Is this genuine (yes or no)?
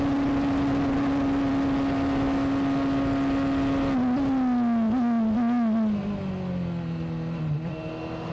yes